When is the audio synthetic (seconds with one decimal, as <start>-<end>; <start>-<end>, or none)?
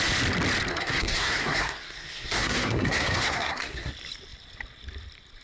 0.7-3.9